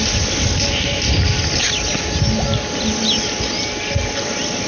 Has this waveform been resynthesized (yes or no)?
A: no